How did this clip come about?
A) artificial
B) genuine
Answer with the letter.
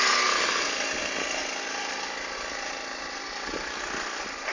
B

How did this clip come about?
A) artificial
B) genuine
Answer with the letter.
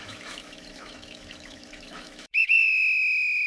A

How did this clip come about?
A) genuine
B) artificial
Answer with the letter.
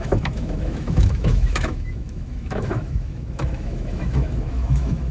B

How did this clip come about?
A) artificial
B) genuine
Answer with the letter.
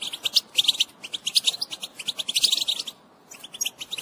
B